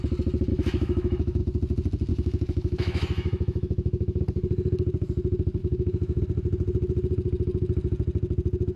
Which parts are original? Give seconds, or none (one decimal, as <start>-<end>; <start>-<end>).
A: 0.0-0.5; 1.4-2.1; 4.2-5.6; 6.2-8.8